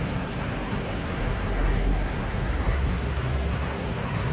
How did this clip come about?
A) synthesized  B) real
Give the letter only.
A